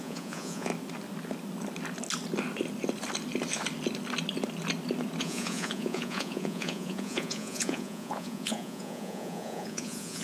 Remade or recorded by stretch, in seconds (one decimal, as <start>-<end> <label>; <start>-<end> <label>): 0.0-0.7 remade; 0.7-5.2 recorded; 5.2-10.2 remade